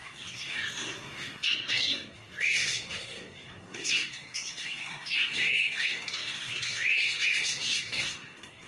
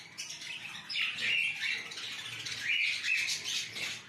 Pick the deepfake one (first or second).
first